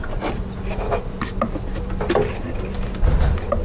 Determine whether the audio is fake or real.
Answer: real